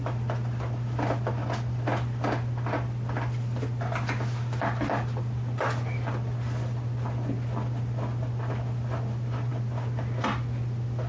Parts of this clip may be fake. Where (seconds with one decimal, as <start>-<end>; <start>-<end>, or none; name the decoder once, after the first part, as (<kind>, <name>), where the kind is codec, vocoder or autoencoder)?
none